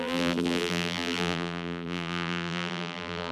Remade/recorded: remade